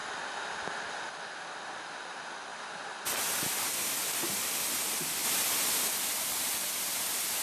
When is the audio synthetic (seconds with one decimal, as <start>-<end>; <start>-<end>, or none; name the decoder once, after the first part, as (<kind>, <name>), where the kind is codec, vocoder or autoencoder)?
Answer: 2.5-4.6 (vocoder, BigVGAN v2); 5.2-6.9